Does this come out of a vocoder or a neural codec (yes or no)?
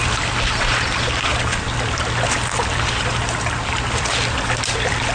no